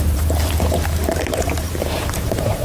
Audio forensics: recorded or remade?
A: remade